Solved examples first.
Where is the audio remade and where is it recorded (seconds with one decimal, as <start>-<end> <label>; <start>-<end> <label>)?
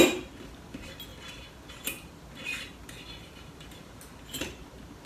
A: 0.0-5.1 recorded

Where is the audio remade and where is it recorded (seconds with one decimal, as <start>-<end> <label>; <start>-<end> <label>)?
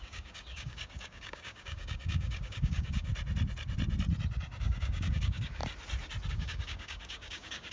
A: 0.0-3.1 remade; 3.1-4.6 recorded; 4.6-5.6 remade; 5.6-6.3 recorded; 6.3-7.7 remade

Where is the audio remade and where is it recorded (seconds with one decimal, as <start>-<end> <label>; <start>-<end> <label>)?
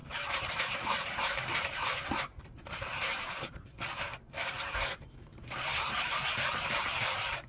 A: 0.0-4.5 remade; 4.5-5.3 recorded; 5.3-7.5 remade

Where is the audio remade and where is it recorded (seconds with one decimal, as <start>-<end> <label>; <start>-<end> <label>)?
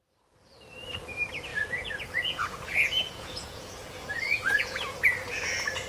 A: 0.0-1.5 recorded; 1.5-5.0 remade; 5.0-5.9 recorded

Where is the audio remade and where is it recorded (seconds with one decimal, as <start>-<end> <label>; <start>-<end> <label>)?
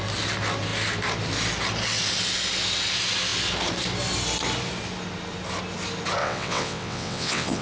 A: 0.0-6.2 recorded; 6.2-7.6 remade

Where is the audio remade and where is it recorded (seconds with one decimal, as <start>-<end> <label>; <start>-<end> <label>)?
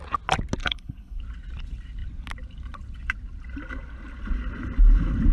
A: 0.0-0.6 recorded; 0.6-1.2 remade; 1.2-5.3 recorded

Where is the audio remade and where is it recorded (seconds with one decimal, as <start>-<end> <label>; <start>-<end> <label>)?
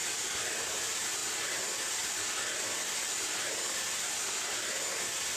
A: 0.0-5.4 recorded